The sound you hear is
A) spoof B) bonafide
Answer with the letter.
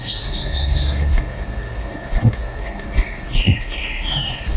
A